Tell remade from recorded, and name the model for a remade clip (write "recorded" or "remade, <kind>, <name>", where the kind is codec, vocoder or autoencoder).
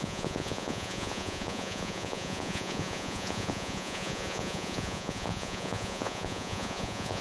remade, vocoder, Vocos